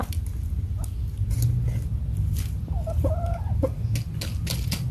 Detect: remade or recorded recorded